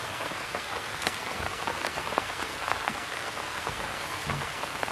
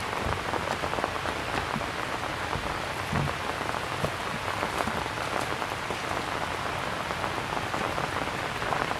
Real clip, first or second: second